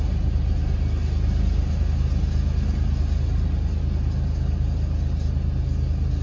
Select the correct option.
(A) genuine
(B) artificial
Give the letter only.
A